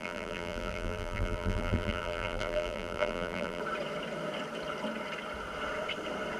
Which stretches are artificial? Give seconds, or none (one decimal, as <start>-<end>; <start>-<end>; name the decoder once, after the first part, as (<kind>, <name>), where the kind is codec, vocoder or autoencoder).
0.0-3.6 (vocoder, BigVGAN v2)